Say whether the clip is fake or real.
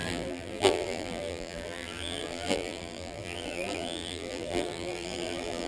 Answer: fake